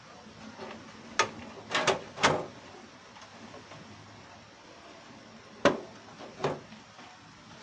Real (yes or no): yes